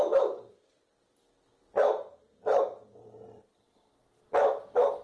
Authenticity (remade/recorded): recorded